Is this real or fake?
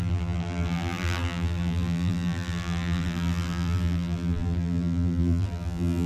fake